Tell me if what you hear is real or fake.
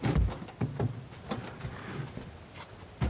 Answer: real